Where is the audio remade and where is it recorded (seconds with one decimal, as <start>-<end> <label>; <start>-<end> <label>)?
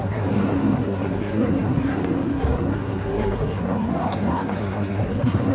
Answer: 0.0-5.5 remade